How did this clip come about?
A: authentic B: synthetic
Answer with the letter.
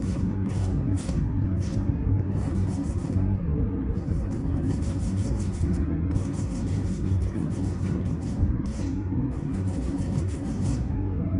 B